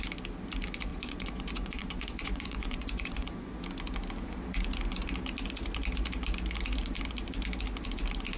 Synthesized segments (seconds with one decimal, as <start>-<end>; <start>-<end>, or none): 0.9-3.5

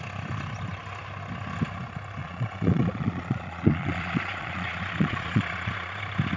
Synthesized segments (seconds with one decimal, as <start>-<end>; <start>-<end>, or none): 2.2-6.0

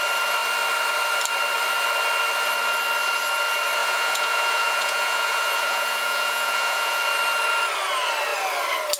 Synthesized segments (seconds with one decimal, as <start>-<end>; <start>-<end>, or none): 3.8-7.0

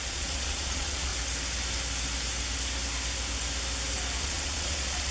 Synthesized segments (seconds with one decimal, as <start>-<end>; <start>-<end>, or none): 0.0-1.1; 4.2-5.1

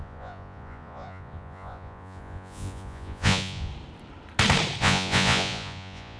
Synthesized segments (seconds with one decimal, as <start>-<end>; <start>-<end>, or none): 0.0-3.7; 4.8-6.2

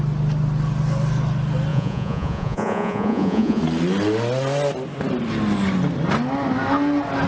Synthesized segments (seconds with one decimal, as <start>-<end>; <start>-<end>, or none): 1.7-3.6

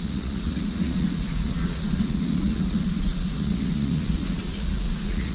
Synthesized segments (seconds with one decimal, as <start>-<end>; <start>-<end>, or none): 0.0-5.3

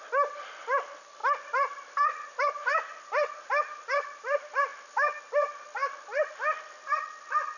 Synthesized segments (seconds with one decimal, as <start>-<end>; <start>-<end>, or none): none